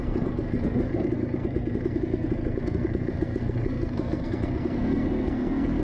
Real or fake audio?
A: fake